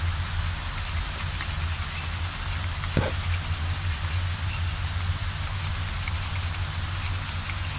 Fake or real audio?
real